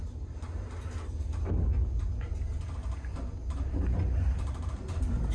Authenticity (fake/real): real